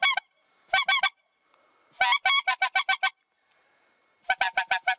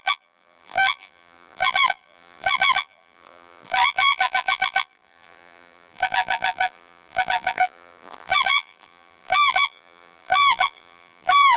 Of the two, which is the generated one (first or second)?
second